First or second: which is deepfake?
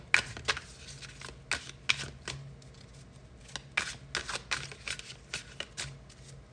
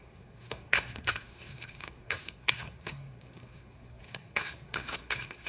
second